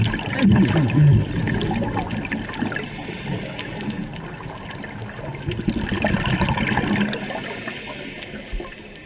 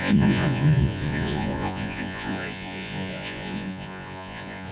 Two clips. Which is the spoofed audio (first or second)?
second